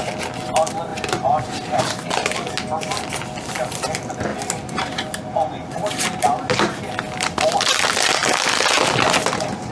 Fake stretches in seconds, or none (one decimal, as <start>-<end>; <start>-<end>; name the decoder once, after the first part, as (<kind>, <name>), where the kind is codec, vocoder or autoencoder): none